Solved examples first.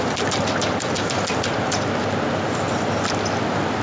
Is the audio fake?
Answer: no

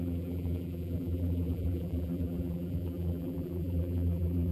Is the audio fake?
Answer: yes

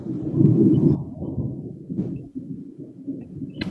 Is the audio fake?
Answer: yes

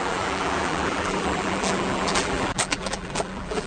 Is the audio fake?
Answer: yes